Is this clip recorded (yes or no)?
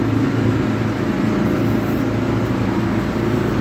yes